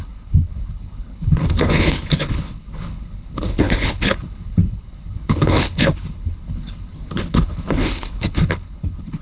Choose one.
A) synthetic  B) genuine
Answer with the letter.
A